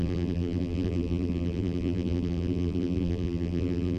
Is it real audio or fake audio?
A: fake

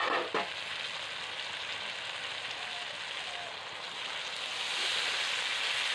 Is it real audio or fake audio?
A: real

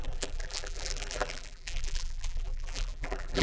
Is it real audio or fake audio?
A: fake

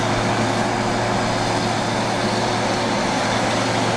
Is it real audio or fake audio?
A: real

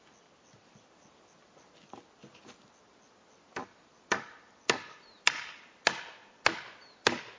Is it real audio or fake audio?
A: real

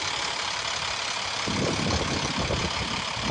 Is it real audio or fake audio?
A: fake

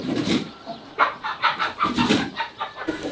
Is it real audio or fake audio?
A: fake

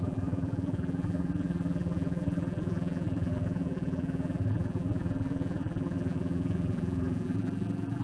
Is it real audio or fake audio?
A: fake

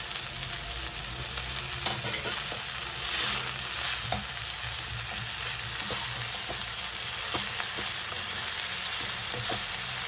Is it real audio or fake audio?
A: real